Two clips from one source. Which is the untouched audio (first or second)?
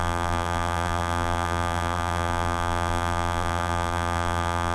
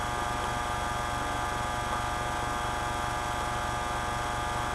second